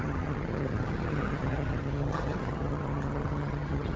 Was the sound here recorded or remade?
remade